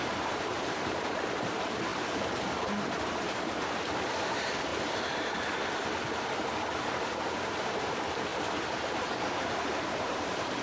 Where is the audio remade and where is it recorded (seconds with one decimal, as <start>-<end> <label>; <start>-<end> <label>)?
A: 0.0-4.7 remade; 4.7-7.6 recorded; 7.6-10.6 remade